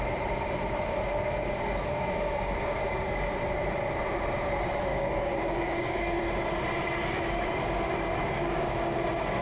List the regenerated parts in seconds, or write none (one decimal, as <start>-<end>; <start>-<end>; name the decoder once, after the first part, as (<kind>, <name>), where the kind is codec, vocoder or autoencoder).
1.4-3.3 (codec, DAC); 4.9-6.2; 7.0-9.0